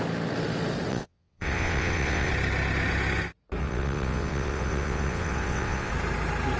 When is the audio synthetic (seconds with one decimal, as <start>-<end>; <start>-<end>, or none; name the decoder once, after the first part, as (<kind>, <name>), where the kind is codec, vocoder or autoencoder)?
0.9-2.3 (vocoder, WaveNeXt); 3.6-5.9